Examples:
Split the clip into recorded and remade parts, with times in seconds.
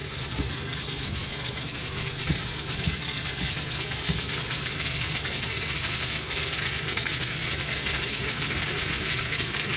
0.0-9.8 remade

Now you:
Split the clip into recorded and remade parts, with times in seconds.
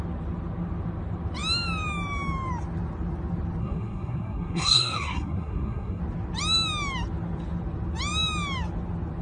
0.0-3.6 recorded; 3.6-6.0 remade; 6.0-9.2 recorded